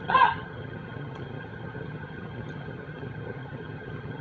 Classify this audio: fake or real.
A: fake